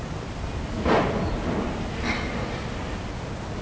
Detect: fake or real real